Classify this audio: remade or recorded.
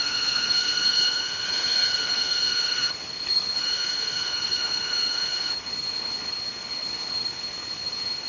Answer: remade